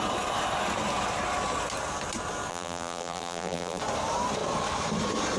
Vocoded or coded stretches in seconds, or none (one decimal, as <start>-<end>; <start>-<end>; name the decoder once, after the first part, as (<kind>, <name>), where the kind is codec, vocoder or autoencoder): 2.5-3.8 (vocoder, BigVGAN v2)